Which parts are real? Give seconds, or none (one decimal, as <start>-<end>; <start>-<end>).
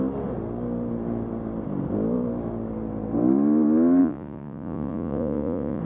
0.0-4.0